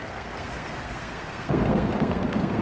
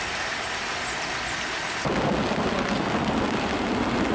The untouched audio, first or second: second